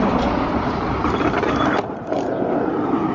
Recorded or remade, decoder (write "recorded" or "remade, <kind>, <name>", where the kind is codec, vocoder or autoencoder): remade, vocoder, BigVGAN v2